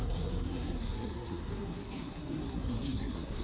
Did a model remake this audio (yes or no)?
yes